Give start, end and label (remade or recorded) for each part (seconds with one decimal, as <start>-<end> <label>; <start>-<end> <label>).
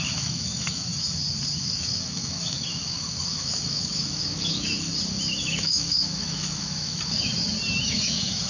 0.0-0.9 remade; 0.9-1.6 recorded; 1.6-4.9 remade; 4.9-5.4 recorded; 5.4-7.3 remade; 7.3-7.8 recorded; 7.8-8.5 remade